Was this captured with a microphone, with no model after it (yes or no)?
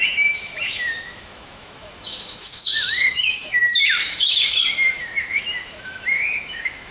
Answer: no